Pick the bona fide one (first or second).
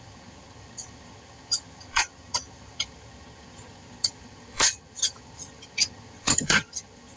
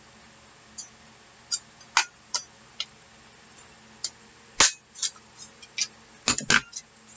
second